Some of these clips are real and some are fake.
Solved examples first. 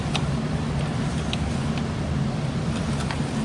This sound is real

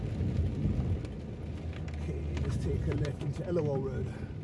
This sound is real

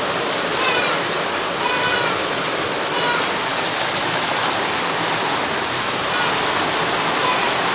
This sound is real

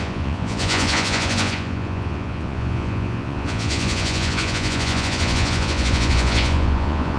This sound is fake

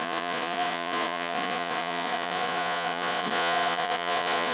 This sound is fake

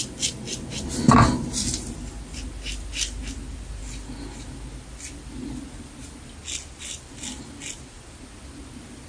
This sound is real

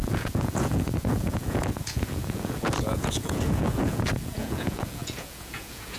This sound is fake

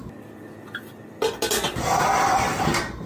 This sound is real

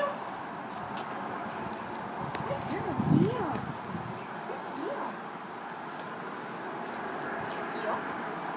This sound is real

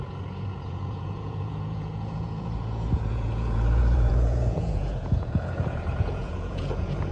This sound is fake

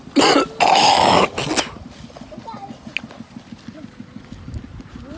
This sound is real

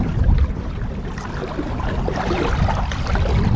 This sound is real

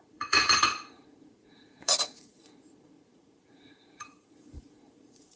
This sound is fake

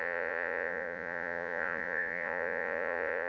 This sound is fake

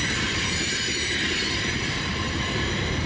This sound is real